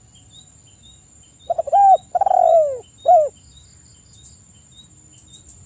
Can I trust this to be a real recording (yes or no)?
yes